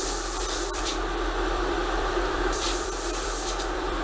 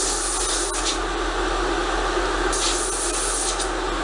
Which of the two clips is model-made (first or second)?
first